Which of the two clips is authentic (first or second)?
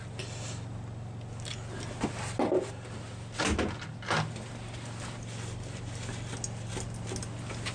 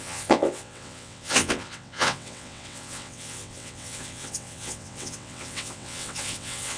first